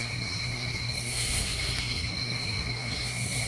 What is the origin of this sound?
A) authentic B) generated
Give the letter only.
B